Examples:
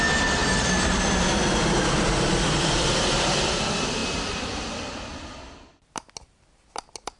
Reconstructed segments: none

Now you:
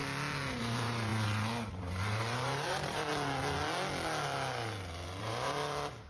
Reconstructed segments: 0.6-1.1 (vocoder, BigVGAN v2); 1.7-3.1; 5.2-6.1